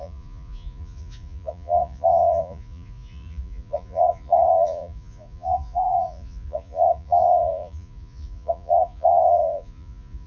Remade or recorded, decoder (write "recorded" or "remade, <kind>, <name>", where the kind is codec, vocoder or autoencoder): remade, vocoder, Vocos